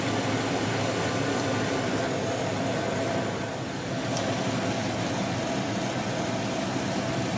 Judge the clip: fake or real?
real